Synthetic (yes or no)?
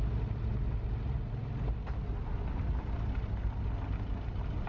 no